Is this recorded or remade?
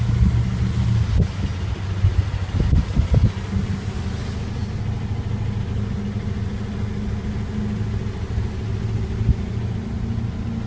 recorded